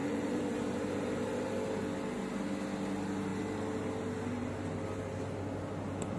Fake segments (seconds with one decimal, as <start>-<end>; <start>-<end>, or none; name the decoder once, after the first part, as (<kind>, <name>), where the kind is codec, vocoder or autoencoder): 0.0-1.5 (vocoder, BigVGAN v2); 3.3-4.5